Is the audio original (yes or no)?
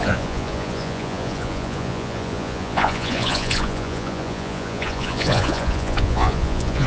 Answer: no